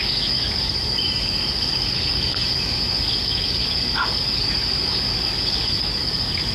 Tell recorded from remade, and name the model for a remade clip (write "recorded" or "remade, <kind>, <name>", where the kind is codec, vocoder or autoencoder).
remade, codec, DAC